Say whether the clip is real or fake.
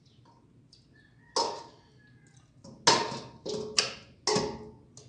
real